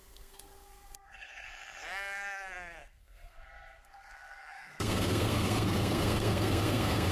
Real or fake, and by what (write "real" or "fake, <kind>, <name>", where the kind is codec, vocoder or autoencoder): fake, codec, SNAC